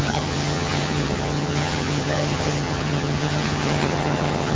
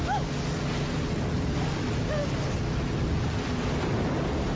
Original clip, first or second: second